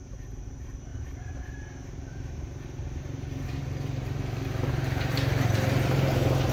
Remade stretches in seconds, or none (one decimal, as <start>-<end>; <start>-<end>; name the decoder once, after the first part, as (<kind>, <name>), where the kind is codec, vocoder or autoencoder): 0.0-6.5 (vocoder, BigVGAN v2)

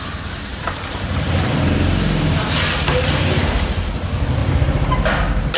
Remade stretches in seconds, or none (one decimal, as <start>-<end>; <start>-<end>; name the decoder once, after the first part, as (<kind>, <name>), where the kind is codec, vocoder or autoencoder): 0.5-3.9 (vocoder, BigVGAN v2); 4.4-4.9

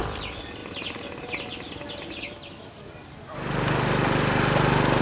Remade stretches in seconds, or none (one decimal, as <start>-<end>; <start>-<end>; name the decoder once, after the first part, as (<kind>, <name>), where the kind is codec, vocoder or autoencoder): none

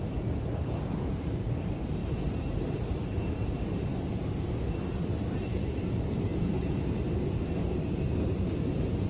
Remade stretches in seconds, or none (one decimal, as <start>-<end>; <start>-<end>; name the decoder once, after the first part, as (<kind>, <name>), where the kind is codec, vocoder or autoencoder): 0.0-9.1 (vocoder, BigVGAN v2)